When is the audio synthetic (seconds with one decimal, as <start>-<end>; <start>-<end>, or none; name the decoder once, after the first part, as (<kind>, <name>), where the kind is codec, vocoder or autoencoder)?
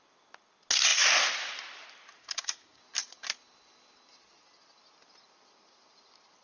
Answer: 2.2-2.8 (codec, DAC)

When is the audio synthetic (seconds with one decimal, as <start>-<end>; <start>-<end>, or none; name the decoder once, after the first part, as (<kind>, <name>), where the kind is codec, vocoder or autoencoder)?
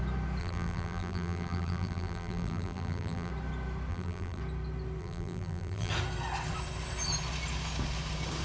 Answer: 0.4-3.3 (vocoder, BigVGAN v2); 3.9-4.4; 5.0-5.9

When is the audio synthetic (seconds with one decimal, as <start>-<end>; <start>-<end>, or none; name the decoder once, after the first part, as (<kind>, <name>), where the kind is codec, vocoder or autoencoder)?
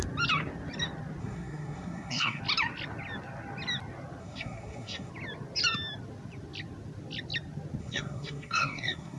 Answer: 1.2-2.4 (codec, SNAC); 4.2-5.1; 7.8-9.2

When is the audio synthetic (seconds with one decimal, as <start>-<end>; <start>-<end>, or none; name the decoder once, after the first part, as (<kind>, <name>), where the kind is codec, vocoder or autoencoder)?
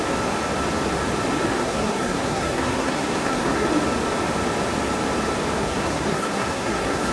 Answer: 1.5-3.7 (codec, SNAC); 5.6-7.1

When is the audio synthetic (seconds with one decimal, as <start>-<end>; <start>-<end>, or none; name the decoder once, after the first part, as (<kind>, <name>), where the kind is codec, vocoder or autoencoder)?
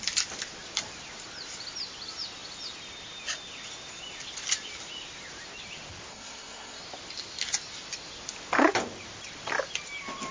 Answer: 6.1-6.8 (codec, SNAC)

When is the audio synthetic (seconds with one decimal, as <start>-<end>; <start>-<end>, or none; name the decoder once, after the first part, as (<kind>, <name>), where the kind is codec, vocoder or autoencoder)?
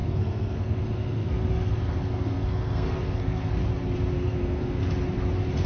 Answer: 0.0-3.5 (codec, SNAC); 4.1-4.8